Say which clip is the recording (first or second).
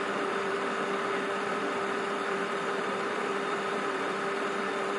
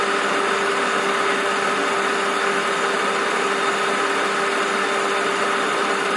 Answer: second